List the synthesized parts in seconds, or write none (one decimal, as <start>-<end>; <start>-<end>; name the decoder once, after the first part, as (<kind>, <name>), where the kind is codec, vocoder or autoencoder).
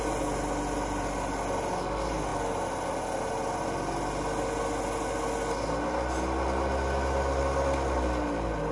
none